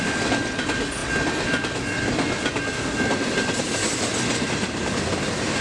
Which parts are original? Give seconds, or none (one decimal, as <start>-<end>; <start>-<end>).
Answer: 0.0-5.6